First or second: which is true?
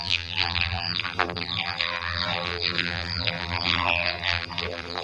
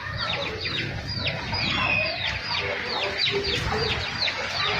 second